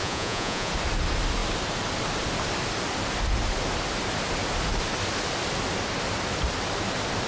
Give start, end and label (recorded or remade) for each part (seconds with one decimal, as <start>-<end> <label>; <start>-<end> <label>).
0.0-0.7 remade; 0.7-7.3 recorded